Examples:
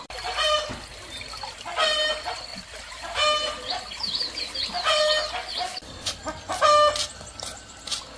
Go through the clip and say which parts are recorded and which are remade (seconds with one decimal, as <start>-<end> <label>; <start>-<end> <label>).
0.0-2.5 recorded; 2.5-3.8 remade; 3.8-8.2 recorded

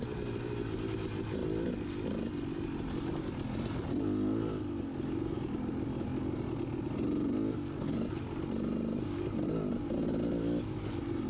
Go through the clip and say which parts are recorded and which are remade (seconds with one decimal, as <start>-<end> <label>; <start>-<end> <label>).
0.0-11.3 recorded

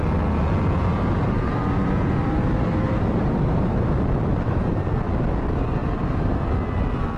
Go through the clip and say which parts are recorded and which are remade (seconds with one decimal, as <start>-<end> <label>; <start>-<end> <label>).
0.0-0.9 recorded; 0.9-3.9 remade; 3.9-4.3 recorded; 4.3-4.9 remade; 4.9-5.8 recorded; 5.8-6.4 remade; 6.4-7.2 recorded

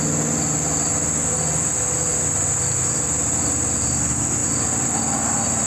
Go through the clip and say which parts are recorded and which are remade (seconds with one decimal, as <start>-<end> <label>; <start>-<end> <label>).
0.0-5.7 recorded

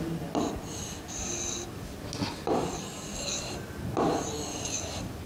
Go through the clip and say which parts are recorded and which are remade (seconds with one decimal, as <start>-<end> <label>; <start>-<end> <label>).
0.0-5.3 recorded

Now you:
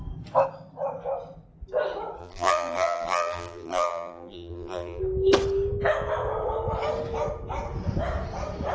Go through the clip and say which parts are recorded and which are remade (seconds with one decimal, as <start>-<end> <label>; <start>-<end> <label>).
0.0-2.2 recorded; 2.2-5.0 remade; 5.0-8.7 recorded